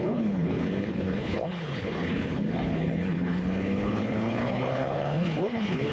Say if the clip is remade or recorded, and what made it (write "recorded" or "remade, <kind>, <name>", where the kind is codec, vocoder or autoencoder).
remade, codec, HILCodec